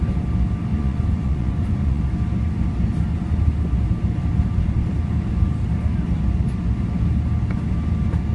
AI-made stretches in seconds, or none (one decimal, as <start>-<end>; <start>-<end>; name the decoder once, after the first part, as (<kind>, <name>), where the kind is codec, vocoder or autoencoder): 0.7-2.0 (vocoder, Vocos)